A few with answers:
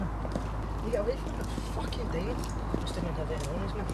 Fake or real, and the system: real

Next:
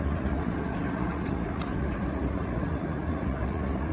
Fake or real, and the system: fake, vocoder, Vocos